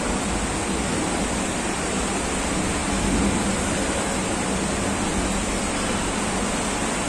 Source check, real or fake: real